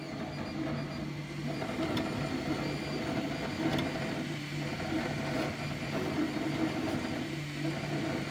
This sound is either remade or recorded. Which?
recorded